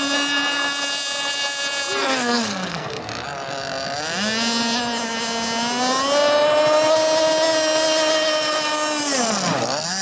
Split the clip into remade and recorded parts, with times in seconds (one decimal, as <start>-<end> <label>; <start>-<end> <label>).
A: 0.0-2.0 recorded; 2.0-3.0 remade; 3.0-10.0 recorded